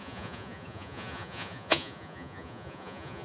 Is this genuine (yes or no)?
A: no